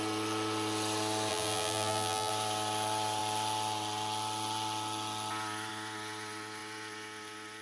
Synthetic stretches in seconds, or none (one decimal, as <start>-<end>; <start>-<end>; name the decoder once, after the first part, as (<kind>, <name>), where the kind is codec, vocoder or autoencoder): 1.3-2.3 (vocoder, BigVGAN v2)